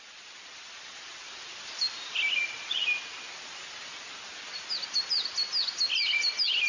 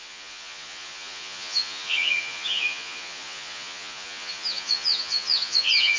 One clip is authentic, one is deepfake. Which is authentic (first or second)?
first